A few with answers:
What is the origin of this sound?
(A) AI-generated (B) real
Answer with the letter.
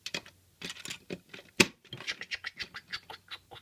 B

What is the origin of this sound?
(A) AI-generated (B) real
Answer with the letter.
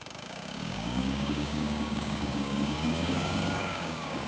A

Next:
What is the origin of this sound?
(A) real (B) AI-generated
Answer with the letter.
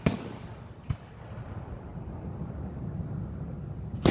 A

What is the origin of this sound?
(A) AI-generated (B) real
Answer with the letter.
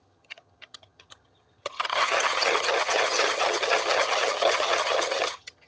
A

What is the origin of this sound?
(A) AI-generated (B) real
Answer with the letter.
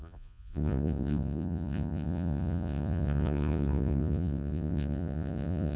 A